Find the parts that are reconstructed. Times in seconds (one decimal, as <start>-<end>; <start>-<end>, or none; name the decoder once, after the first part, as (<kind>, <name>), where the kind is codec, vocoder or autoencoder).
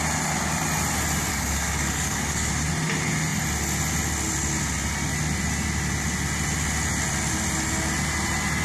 1.3-2.5 (codec, DAC)